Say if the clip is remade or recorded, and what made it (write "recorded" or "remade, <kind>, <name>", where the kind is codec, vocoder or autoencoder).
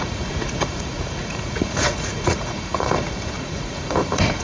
remade, vocoder, Vocos